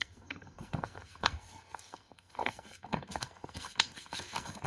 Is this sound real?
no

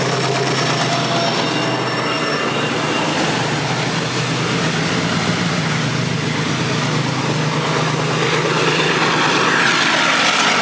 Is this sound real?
yes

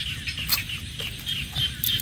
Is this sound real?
yes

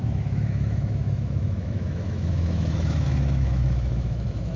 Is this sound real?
no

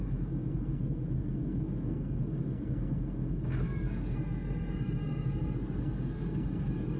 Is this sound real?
no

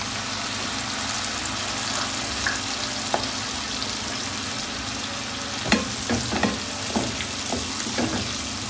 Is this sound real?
yes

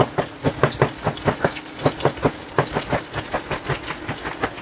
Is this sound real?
yes